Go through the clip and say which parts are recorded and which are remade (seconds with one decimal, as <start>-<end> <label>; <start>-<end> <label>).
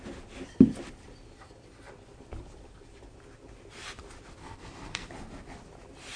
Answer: 0.0-4.4 recorded; 4.4-5.1 remade; 5.1-6.2 recorded